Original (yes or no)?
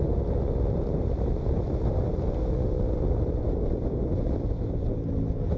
yes